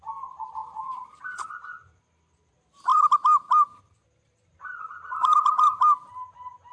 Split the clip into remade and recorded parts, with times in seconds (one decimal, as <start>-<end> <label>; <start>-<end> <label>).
0.0-0.6 recorded; 0.6-1.2 remade; 1.2-2.9 recorded; 2.9-5.6 remade; 5.6-6.7 recorded